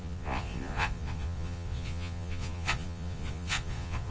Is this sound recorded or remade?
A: remade